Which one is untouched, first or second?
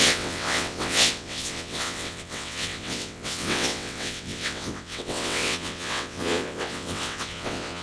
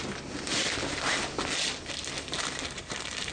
second